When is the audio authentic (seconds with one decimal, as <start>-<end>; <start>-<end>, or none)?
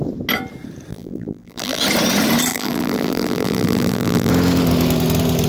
0.0-0.9; 1.8-2.5; 4.3-5.5